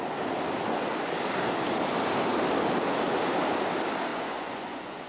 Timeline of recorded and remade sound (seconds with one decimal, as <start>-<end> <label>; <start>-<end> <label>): 0.0-4.1 recorded; 4.1-5.1 remade